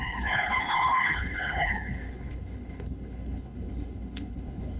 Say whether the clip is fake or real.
fake